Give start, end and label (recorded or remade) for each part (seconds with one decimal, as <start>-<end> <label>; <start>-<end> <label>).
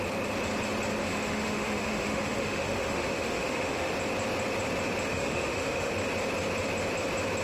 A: 0.0-1.0 recorded; 1.0-3.9 remade; 3.9-5.1 recorded; 5.1-5.9 remade; 5.9-7.4 recorded